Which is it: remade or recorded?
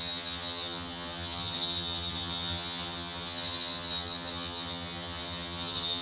remade